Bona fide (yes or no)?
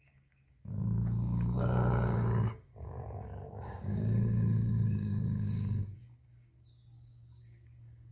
no